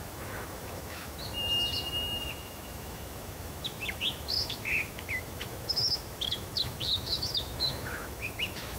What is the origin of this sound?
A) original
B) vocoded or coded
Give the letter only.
B